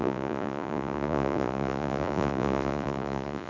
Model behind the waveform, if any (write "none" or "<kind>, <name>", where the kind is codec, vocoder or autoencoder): vocoder, Vocos